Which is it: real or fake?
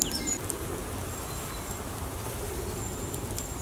real